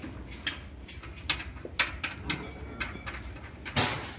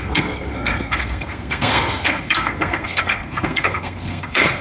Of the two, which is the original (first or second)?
first